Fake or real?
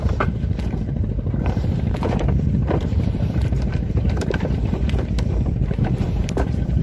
fake